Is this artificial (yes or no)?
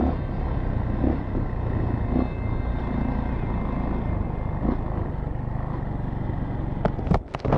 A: no